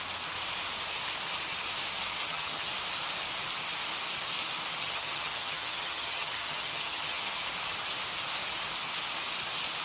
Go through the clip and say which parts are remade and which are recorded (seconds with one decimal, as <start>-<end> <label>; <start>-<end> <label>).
0.0-2.2 recorded; 2.2-2.7 remade; 2.7-4.8 recorded; 4.8-7.4 remade; 7.4-9.8 recorded